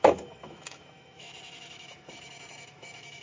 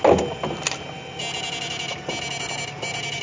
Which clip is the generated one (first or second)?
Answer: first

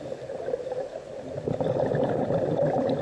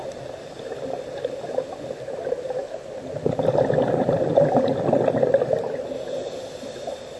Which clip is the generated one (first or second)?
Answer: first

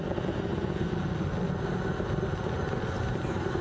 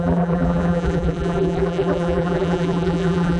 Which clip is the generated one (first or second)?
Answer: second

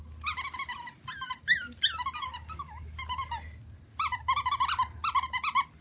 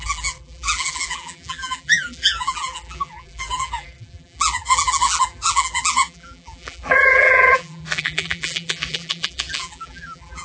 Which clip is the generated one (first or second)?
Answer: second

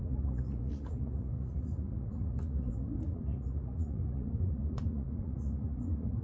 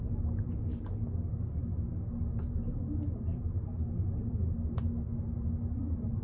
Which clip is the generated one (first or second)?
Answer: first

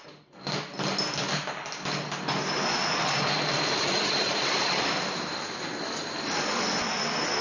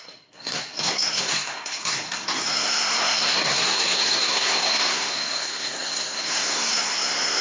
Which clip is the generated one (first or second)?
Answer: second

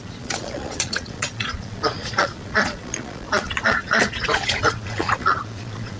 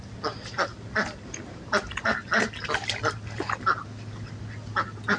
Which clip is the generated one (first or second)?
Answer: first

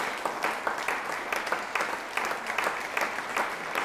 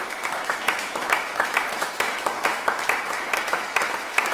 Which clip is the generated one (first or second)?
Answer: second